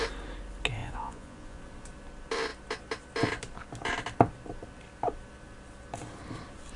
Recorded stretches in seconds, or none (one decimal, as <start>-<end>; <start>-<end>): 0.0-0.8; 1.6-6.8